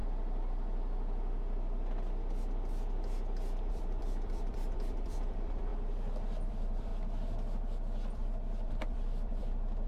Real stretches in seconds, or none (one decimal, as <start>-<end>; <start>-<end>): 0.0-3.7; 5.7-6.5; 6.9-8.7